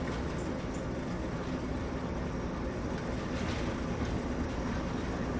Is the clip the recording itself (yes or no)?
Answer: yes